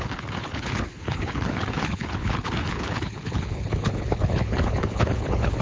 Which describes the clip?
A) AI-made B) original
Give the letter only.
A